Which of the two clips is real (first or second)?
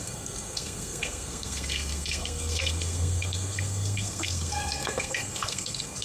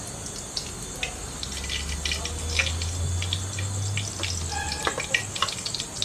second